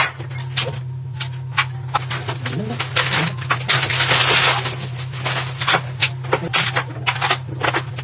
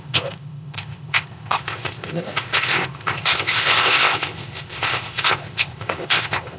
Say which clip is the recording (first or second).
first